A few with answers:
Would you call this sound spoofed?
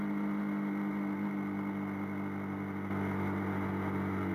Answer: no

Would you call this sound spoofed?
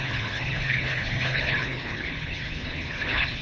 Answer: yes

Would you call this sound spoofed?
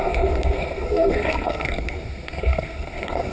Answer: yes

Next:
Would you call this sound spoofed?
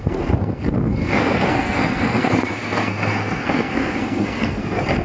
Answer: yes